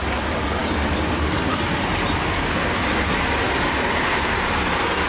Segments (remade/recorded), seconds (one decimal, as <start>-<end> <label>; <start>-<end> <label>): 0.0-5.1 recorded